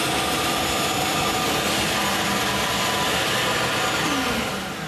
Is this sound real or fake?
real